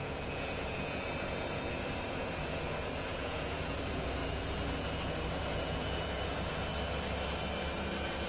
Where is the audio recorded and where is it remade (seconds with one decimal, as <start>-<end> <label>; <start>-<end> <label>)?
0.0-6.7 remade; 6.7-8.3 recorded